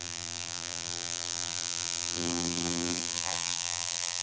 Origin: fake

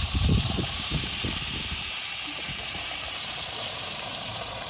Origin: fake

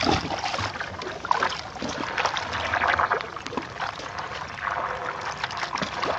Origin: real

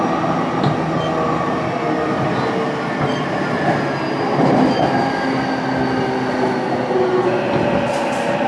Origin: real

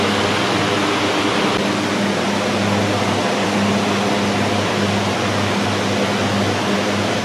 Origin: real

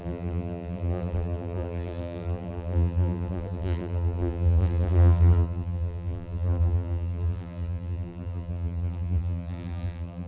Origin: fake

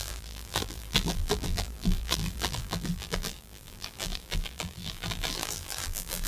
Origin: fake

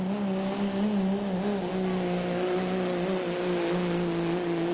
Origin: real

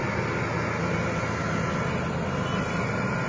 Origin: real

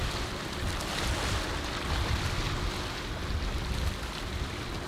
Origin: real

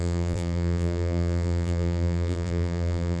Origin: fake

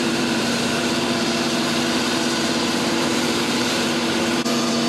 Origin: fake